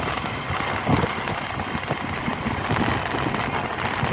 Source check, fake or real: real